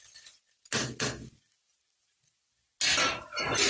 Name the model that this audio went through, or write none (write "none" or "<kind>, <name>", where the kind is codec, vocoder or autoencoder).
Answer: none